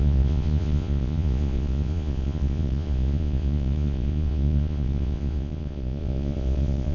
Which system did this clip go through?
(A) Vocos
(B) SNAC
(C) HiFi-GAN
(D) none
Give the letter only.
A